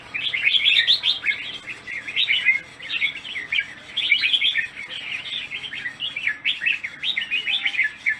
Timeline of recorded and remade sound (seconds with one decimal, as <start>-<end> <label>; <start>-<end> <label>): 0.0-8.2 recorded